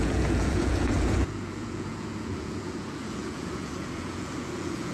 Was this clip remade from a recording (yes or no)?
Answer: yes